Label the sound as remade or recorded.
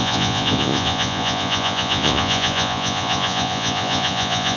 remade